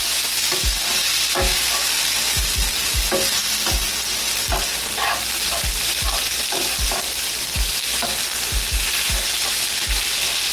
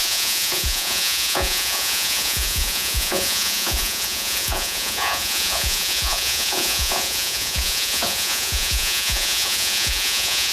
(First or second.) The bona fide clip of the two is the first